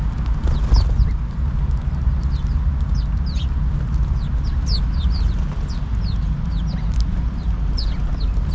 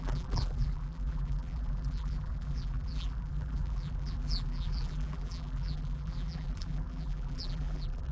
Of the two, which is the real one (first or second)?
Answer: first